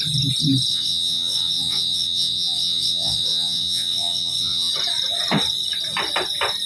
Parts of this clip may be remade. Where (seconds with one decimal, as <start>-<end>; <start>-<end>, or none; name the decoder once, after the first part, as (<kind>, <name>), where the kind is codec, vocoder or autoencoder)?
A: 0.7-4.7 (vocoder, WaveNeXt)

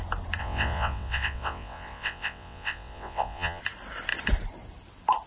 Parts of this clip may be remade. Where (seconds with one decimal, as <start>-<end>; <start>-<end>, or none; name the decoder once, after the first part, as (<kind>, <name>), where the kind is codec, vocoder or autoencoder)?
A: 0.4-3.6 (vocoder, WaveNeXt)